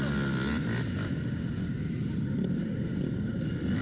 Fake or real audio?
fake